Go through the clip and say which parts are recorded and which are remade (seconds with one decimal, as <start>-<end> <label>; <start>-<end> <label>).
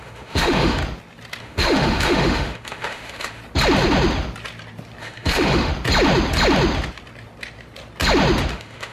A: 0.0-0.8 remade; 0.8-1.4 recorded; 1.4-3.4 remade; 3.4-5.0 recorded; 5.0-5.7 remade; 5.7-8.5 recorded; 8.5-8.9 remade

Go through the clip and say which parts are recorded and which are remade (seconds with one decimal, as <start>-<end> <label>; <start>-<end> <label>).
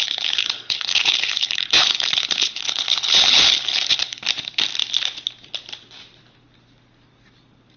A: 0.0-4.2 remade; 4.2-7.8 recorded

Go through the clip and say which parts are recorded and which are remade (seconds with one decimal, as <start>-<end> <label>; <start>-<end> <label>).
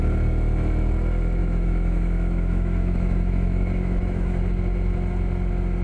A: 0.0-1.4 recorded; 1.4-4.4 remade; 4.4-5.8 recorded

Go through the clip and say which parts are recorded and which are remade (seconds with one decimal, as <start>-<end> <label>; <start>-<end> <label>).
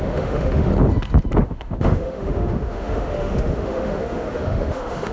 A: 0.0-0.7 remade; 0.7-1.4 recorded; 1.4-5.1 remade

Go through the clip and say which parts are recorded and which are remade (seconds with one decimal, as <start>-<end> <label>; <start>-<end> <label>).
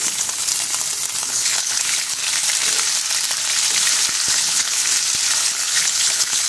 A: 0.0-0.5 remade; 0.5-1.2 recorded; 1.2-2.2 remade; 2.2-4.3 recorded; 4.3-4.8 remade; 4.8-5.4 recorded; 5.4-6.5 remade